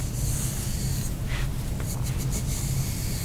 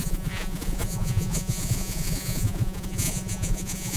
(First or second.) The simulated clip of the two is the second